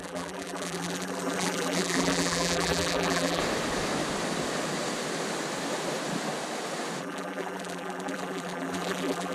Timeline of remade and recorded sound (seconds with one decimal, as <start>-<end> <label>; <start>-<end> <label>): 0.0-3.4 remade; 3.4-7.0 recorded; 7.0-9.3 remade